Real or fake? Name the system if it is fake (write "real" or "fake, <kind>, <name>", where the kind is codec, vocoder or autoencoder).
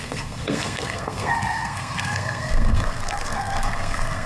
fake, codec, SNAC